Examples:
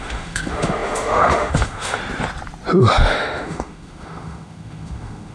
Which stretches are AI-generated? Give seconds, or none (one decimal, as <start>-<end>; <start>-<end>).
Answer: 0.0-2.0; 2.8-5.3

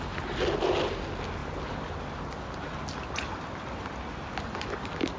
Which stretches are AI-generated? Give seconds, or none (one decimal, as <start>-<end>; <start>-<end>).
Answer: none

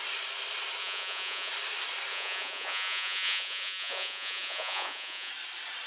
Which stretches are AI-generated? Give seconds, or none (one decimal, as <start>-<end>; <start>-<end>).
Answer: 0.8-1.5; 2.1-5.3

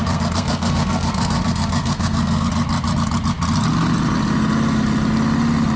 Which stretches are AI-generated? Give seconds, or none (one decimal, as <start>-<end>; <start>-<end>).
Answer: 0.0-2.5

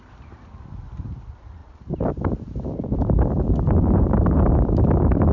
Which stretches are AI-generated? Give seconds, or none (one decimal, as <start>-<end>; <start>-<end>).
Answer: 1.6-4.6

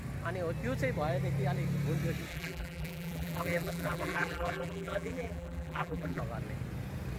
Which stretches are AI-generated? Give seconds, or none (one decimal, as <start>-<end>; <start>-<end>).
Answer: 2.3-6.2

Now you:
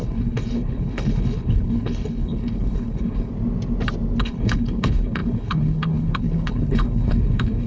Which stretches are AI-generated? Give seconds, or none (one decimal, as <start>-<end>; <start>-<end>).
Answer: 0.0-3.3; 4.2-7.7